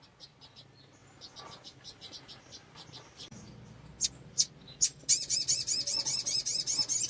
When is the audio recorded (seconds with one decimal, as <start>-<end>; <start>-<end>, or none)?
0.0-7.1